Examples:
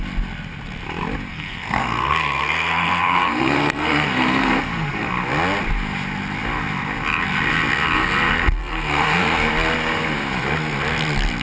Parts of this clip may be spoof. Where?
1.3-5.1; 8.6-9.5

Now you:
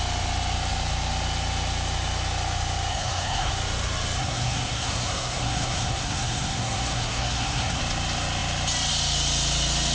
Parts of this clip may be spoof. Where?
2.9-3.5; 4.2-7.8

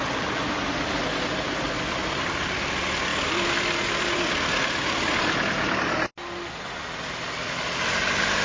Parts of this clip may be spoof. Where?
3.1-4.2

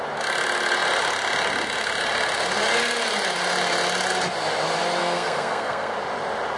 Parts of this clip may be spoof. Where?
5.0-5.9

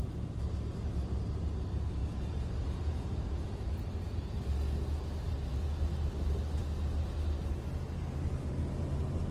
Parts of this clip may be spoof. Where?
2.0-4.4